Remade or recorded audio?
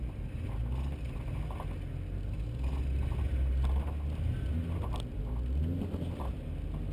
recorded